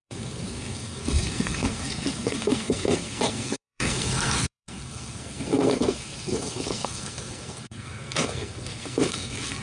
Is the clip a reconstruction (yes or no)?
yes